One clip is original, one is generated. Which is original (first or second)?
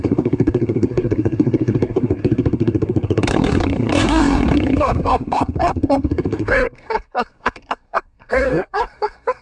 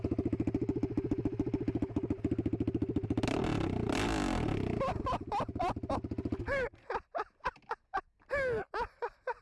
second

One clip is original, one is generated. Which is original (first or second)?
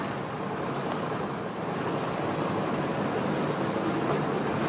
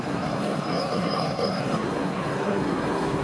first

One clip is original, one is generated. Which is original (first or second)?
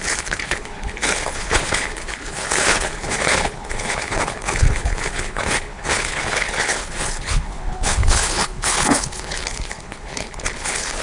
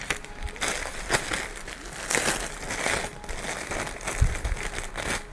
second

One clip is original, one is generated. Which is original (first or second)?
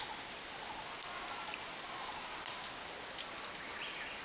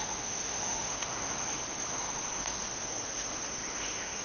first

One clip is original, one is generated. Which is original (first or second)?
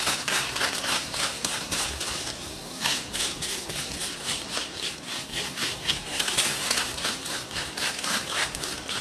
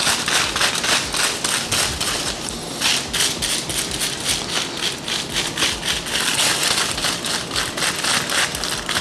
second